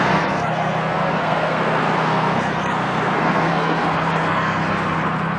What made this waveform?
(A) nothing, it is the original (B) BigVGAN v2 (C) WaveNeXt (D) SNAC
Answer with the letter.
D